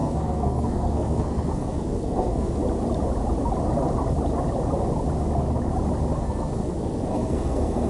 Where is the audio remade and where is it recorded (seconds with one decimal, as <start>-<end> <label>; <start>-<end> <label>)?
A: 0.0-2.6 remade; 2.6-6.2 recorded; 6.2-7.9 remade